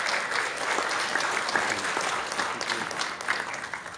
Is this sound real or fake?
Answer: real